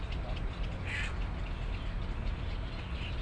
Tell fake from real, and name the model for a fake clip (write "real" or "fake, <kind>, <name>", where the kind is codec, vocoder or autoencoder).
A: real